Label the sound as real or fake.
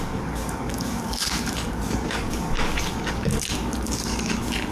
fake